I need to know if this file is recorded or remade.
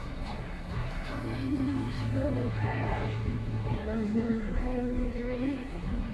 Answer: remade